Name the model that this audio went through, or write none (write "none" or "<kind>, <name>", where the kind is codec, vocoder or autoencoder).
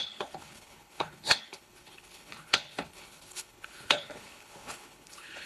codec, HILCodec